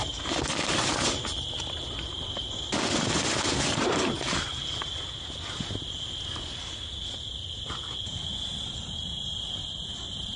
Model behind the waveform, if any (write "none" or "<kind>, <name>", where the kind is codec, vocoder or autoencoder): none